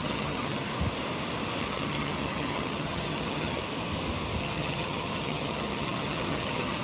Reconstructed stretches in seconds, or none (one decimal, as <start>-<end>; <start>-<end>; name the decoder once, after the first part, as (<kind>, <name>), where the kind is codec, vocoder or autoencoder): 0.0-0.7 (vocoder, HiFi-GAN); 1.6-3.6; 4.4-6.8